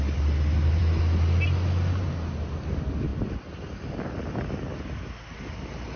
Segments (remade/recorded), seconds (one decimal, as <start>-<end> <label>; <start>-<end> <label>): 0.0-6.0 recorded

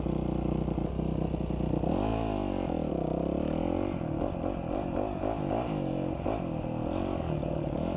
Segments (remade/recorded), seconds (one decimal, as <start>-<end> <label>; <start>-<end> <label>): 0.0-8.0 recorded